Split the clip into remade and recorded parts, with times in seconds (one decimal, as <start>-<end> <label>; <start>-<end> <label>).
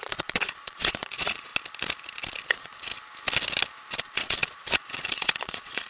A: 0.0-1.5 remade; 1.5-2.5 recorded; 2.5-2.9 remade; 2.9-4.0 recorded; 4.0-5.9 remade